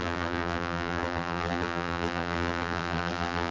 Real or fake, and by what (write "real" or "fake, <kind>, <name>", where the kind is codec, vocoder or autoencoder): fake, vocoder, BigVGAN v2